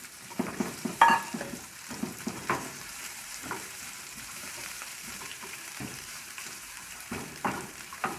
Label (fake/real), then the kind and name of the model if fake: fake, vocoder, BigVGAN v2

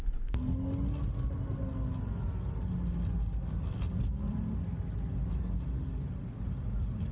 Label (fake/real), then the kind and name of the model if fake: real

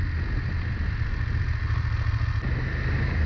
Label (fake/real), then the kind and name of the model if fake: real